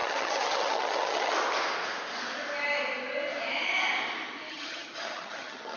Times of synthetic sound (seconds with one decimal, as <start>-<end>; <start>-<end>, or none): 0.0-1.3; 4.5-5.8

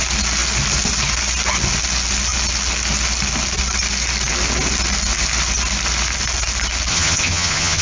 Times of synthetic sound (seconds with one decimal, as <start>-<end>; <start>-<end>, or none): 6.9-7.8